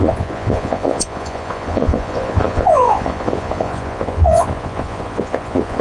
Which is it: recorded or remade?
remade